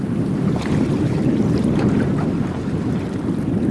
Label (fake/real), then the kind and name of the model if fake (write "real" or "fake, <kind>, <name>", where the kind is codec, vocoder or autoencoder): real